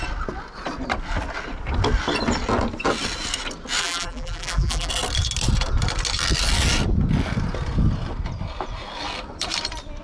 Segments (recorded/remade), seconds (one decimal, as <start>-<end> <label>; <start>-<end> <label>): 0.0-3.8 recorded; 3.8-4.9 remade; 4.9-10.0 recorded